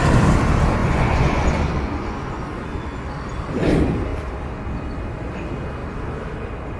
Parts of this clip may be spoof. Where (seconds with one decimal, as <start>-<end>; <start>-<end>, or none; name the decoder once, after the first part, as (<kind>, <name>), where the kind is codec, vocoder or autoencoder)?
0.8-3.1 (vocoder, Vocos)